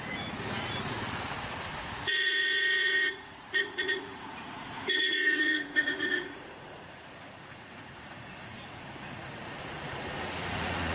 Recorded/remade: remade